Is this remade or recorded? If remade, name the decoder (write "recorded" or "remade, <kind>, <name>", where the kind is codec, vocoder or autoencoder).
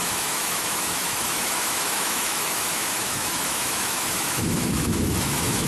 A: remade, autoencoder, DAC-VAE